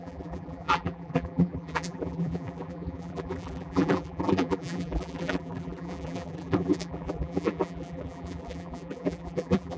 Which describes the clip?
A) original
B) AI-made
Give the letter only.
B